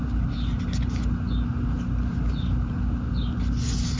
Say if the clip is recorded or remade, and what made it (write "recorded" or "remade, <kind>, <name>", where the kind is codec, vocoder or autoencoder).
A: recorded